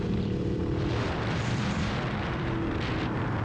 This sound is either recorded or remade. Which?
remade